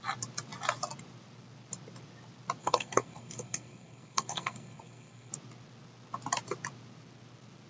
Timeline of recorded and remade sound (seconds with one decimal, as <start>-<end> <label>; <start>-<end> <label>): 0.0-2.6 recorded; 2.6-5.3 remade; 5.3-7.7 recorded